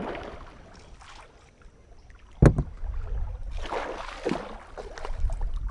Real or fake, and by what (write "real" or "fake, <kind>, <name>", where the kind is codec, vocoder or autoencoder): real